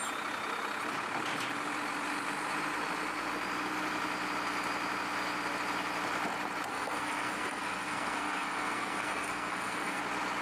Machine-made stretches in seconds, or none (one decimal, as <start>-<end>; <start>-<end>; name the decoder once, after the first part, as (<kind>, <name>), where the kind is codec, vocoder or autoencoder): 6.7-10.0 (codec, SNAC)